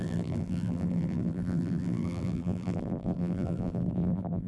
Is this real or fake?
fake